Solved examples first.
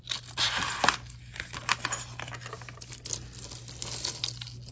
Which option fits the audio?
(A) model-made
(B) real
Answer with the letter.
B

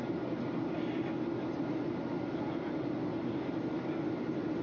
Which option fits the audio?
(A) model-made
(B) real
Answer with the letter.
B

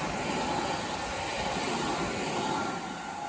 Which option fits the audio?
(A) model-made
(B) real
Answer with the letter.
B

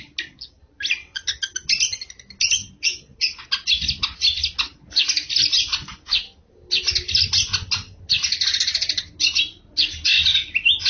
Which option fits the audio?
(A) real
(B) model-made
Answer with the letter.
A